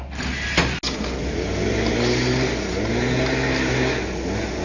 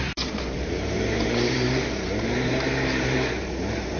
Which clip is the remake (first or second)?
second